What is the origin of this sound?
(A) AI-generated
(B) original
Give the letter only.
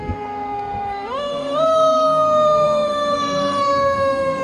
A